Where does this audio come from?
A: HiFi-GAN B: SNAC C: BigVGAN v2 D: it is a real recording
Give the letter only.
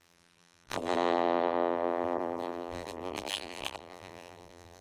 C